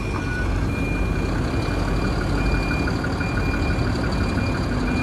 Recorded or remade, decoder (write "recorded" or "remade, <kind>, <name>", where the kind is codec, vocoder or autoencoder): recorded